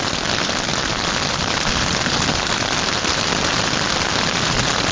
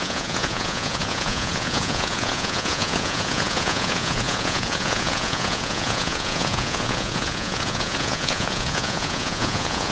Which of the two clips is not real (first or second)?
second